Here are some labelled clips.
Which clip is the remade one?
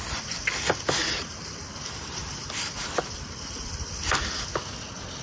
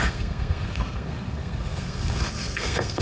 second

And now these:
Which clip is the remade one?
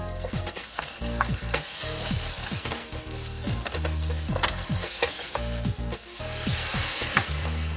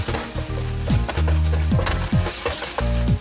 first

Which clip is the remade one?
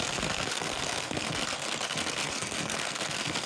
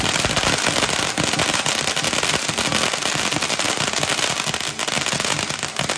first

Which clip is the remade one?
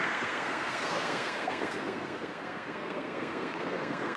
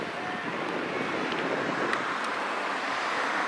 first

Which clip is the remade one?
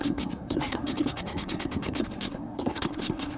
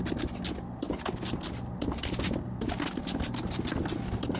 first